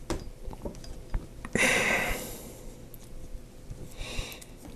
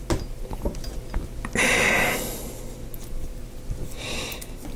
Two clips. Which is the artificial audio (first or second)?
first